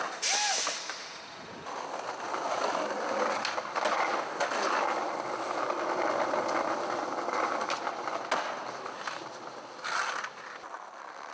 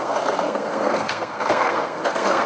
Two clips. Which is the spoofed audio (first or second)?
second